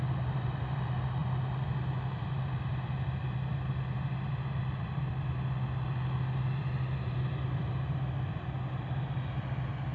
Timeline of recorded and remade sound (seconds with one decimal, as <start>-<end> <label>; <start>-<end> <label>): 0.0-9.9 remade